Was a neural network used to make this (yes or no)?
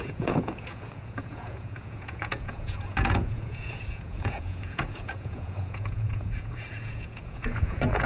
yes